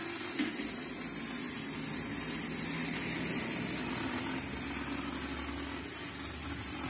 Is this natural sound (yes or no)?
yes